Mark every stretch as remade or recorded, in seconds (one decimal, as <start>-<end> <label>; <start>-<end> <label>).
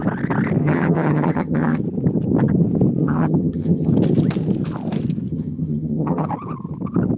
0.0-0.6 recorded; 0.6-1.8 remade; 1.8-3.0 recorded; 3.0-3.9 remade; 3.9-5.3 recorded; 5.3-6.3 remade; 6.3-7.2 recorded